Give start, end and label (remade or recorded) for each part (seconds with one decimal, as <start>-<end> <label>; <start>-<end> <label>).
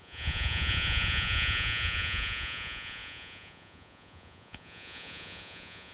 0.0-5.9 remade